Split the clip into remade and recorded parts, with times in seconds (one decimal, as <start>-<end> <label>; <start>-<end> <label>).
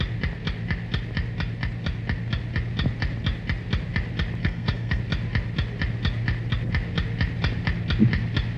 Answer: 0.0-4.4 recorded; 4.4-5.0 remade; 5.0-8.6 recorded